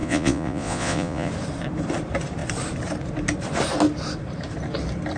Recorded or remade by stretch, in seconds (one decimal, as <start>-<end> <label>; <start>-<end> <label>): 0.0-1.3 remade; 1.3-5.2 recorded